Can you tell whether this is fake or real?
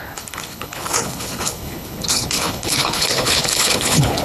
fake